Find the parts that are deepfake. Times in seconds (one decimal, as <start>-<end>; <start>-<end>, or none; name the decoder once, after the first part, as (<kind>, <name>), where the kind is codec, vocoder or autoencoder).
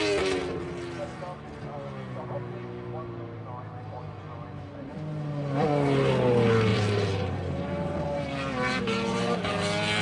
6.7-9.5 (vocoder, BigVGAN v2)